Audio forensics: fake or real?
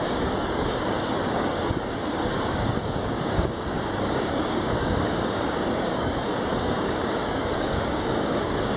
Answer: fake